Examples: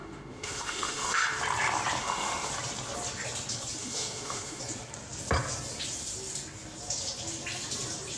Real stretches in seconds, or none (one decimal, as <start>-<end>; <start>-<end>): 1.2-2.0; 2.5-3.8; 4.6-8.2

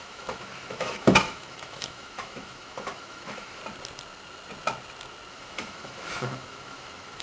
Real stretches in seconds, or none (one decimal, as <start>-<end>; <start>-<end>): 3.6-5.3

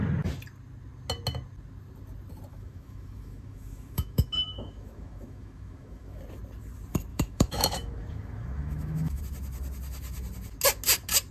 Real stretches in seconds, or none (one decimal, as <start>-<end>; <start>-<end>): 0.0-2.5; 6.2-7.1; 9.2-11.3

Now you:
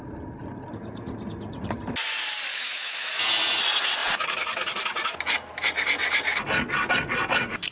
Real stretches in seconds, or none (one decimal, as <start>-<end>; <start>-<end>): 0.0-2.5; 3.1-7.7

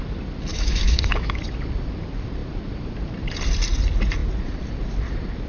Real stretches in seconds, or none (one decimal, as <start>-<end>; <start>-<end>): 0.0-0.5; 1.4-5.5